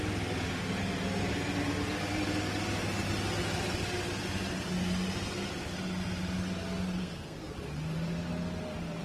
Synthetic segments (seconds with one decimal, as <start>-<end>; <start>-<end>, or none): 7.0-7.5